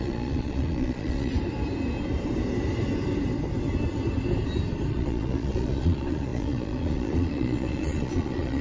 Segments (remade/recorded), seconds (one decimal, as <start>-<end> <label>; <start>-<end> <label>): 0.0-1.3 remade; 1.3-4.9 recorded; 4.9-8.6 remade